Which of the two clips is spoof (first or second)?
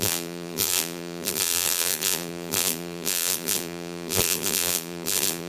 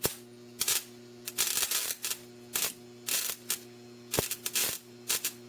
first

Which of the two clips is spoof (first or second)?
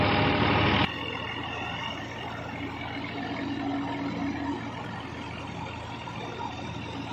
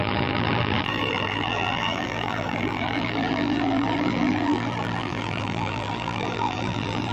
second